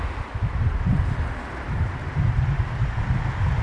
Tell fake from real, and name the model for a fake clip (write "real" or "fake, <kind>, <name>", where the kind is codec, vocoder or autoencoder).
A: real